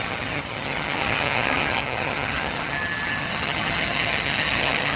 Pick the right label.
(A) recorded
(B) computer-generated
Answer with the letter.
B